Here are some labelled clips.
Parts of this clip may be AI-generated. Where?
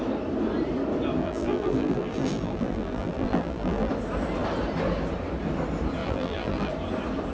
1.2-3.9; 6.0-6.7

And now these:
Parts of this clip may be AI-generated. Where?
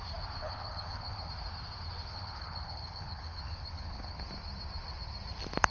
0.4-1.3; 2.1-4.2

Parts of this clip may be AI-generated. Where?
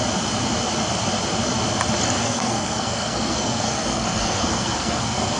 2.2-5.4